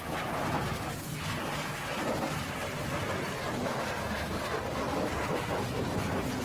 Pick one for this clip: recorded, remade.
recorded